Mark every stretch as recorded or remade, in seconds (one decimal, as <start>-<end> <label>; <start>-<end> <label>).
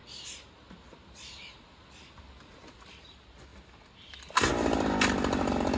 0.0-2.4 recorded; 2.4-3.5 remade; 3.5-4.5 recorded; 4.5-5.8 remade